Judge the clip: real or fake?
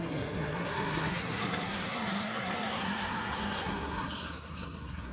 fake